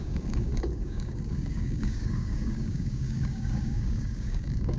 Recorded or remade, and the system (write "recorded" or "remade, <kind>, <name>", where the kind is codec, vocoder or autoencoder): remade, codec, DAC